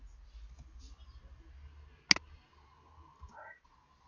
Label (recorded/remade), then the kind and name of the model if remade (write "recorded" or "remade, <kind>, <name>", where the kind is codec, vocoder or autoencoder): recorded